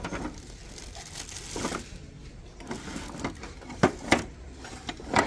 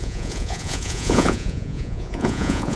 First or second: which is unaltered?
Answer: first